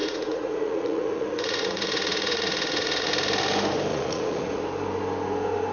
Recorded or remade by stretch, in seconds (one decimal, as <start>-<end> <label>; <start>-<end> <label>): 0.0-3.1 remade; 3.1-3.9 recorded; 3.9-4.6 remade; 4.6-5.7 recorded